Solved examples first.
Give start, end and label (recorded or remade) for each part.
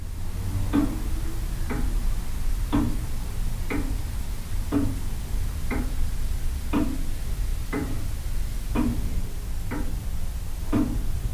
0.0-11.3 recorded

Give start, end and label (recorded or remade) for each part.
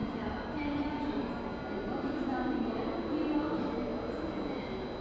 0.0-1.5 remade; 1.5-3.5 recorded; 3.5-3.9 remade; 3.9-5.0 recorded